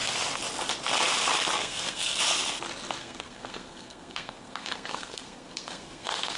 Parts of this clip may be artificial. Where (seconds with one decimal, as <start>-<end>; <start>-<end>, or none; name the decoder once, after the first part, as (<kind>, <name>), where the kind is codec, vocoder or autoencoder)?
1.6-2.2 (codec, SNAC); 3.0-6.4